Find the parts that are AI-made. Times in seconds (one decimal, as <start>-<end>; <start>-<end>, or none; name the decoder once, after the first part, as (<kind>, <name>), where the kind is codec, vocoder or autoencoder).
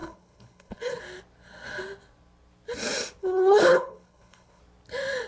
0.0-1.0 (codec, HILCodec); 3.2-4.6